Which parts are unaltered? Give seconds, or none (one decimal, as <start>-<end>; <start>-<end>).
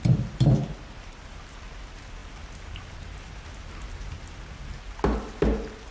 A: 0.0-5.9